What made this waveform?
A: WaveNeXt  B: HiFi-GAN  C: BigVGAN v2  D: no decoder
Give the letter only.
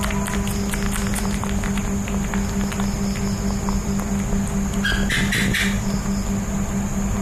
D